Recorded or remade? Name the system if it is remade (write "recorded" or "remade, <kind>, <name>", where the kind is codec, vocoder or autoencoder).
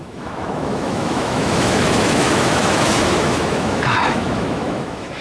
remade, autoencoder, DAC-VAE